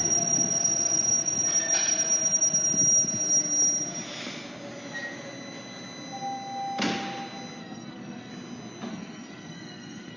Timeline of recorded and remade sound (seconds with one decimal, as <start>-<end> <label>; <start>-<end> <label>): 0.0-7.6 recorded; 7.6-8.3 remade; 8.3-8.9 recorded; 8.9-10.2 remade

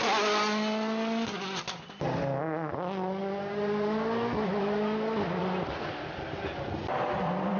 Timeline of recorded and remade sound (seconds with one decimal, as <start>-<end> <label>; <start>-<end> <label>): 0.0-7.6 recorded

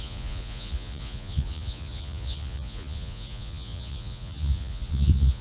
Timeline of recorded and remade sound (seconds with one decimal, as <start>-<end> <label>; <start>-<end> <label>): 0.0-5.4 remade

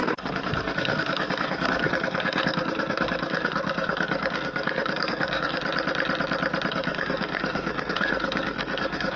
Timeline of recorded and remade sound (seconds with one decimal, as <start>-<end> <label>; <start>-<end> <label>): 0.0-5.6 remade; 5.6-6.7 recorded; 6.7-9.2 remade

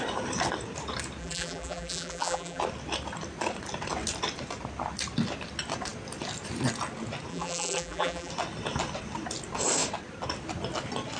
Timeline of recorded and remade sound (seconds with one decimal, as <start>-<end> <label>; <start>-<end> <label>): 0.0-1.2 recorded; 1.2-2.6 remade; 2.6-7.3 recorded; 7.3-8.3 remade; 8.3-11.2 recorded

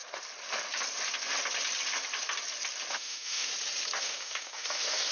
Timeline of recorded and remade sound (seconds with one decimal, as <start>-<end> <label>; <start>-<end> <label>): 0.0-2.9 recorded; 2.9-3.5 remade; 3.5-4.0 recorded; 4.0-5.1 remade